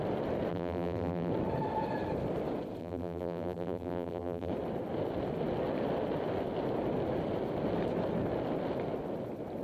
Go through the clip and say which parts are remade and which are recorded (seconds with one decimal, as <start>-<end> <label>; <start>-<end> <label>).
0.0-0.5 recorded; 0.5-1.3 remade; 1.3-2.8 recorded; 2.8-4.5 remade; 4.5-9.6 recorded